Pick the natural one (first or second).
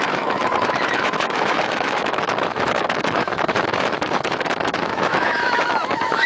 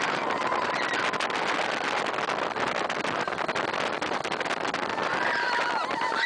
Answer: second